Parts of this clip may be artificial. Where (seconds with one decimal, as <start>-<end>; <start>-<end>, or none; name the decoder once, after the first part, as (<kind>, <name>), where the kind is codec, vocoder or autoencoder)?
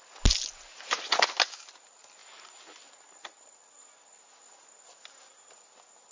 2.2-2.8 (vocoder, Vocos)